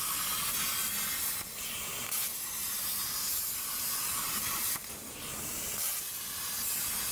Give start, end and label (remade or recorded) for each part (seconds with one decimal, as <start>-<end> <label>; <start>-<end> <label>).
0.0-2.9 recorded; 2.9-6.0 remade; 6.0-7.1 recorded